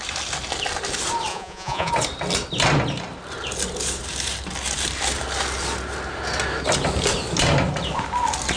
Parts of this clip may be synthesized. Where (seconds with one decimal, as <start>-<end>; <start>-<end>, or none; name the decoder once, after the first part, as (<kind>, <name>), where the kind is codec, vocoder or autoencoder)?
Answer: 1.3-1.9 (vocoder, Vocos)